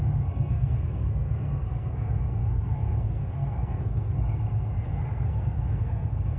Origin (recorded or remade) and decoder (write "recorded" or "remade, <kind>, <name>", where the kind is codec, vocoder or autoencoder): remade, codec, SNAC